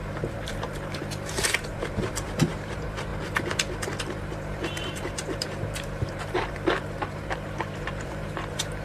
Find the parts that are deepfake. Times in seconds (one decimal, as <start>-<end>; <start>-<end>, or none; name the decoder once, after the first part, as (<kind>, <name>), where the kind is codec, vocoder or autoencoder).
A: 0.0-3.1 (vocoder, BigVGAN v2); 4.0-8.8